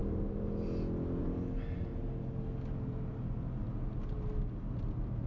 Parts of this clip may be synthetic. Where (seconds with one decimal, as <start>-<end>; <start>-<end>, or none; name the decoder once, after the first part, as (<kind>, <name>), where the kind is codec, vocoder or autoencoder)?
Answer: none